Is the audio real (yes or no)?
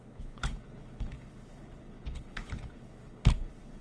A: no